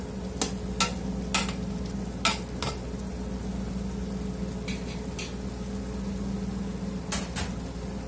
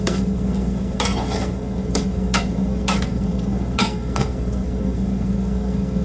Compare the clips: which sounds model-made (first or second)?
second